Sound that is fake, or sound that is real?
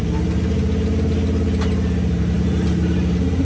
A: real